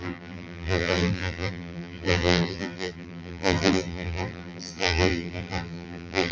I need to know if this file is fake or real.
fake